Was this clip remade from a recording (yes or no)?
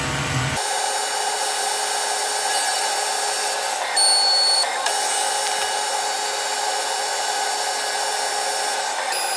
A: no